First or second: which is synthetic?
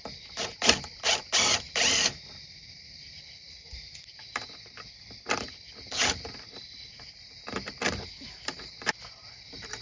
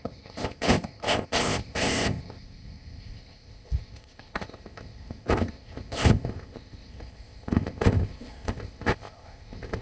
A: second